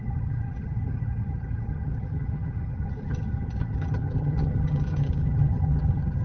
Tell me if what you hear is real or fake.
fake